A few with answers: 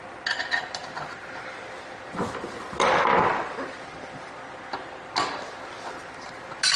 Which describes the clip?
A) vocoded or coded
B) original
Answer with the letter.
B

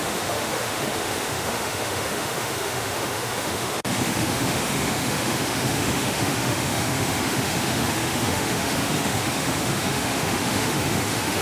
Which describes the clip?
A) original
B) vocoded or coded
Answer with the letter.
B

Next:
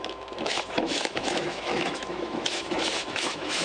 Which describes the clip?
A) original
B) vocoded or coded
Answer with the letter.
B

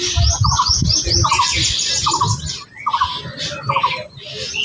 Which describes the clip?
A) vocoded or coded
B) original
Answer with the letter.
B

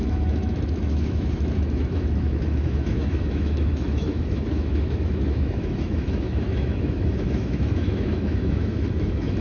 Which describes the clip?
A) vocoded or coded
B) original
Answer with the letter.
A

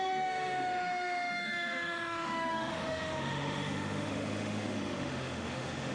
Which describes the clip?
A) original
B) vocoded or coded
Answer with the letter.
B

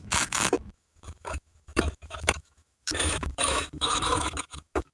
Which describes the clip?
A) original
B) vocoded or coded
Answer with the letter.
B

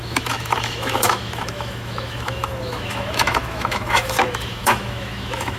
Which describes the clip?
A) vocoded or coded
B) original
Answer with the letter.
A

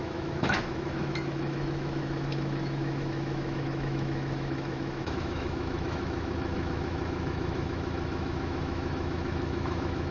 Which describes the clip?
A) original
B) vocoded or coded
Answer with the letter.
B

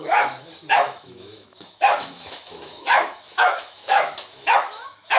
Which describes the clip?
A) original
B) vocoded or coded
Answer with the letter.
B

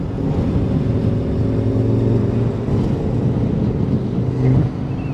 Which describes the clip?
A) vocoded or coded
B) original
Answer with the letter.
B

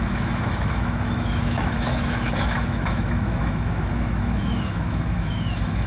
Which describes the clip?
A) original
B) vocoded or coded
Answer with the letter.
B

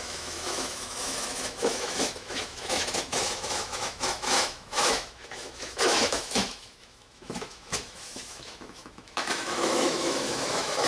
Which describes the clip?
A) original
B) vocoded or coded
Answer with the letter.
B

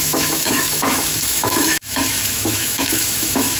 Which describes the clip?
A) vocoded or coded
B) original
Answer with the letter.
A